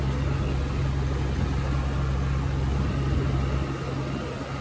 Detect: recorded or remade recorded